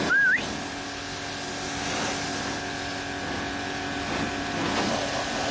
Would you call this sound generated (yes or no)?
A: no